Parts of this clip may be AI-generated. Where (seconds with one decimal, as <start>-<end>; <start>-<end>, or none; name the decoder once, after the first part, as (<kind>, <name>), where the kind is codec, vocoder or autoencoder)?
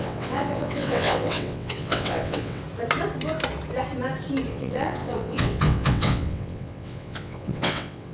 0.0-2.6 (vocoder, WaveNeXt); 4.5-8.1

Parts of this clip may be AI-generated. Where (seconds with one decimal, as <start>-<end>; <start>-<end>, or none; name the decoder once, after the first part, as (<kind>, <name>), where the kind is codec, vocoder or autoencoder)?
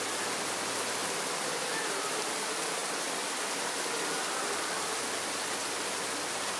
none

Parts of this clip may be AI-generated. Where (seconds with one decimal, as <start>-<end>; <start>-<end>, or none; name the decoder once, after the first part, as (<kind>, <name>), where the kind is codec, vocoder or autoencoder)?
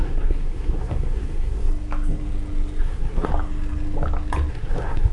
0.0-1.7 (codec, SNAC); 2.8-3.3; 4.5-5.1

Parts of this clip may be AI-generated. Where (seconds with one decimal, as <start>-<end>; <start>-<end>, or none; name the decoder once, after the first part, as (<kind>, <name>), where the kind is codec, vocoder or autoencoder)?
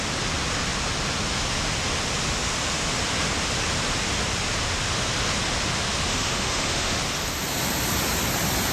6.1-7.0 (autoencoder, DAC-VAE)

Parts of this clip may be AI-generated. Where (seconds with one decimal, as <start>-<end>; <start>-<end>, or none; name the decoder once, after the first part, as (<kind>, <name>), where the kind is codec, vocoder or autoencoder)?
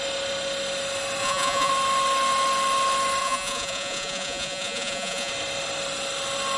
1.2-1.7 (vocoder, Vocos); 3.2-5.3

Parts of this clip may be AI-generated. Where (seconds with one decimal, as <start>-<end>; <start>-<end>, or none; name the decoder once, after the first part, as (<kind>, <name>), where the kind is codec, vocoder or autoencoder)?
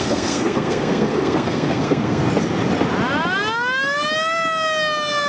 0.0-2.2 (codec, SNAC)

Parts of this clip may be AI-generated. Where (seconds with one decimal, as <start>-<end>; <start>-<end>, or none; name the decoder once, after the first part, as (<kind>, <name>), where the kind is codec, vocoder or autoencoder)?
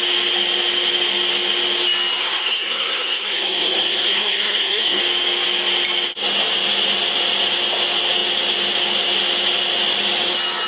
2.2-5.0 (codec, SNAC)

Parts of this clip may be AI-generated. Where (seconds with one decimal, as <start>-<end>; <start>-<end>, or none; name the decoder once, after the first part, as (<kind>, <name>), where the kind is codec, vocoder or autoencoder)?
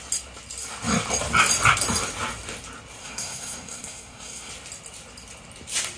3.0-4.5 (codec, SNAC)